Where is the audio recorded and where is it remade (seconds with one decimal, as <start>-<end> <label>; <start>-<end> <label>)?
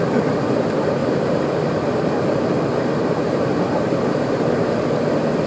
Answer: 0.0-1.0 recorded; 1.0-4.3 remade; 4.3-5.5 recorded